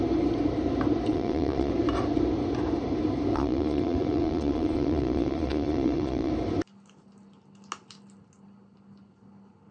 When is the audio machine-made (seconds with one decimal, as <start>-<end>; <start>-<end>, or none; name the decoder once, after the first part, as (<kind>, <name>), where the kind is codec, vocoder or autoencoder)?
1.1-1.7 (vocoder, Vocos); 3.3-6.3